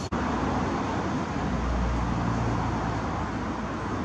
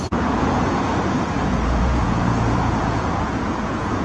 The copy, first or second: second